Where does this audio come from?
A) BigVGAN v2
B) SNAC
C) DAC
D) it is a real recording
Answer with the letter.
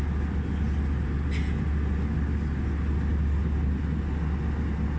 D